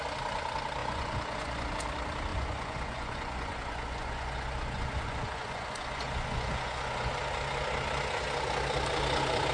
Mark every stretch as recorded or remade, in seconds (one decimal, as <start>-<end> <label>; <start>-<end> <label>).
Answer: 0.0-0.8 recorded; 0.8-1.7 remade; 1.7-2.3 recorded; 2.3-7.1 remade; 7.1-9.5 recorded